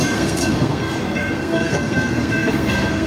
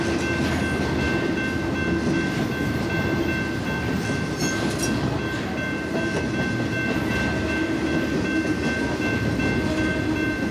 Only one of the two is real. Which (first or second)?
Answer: second